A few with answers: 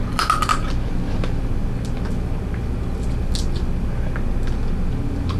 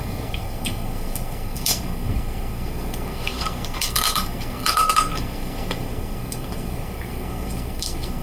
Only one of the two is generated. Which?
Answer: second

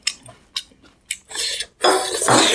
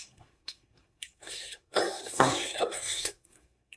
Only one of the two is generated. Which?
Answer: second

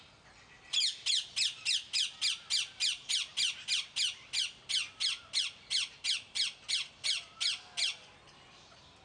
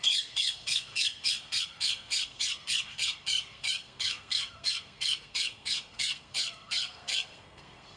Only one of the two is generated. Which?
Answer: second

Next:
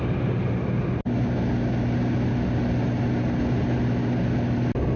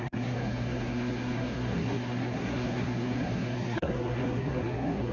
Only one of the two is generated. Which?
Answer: second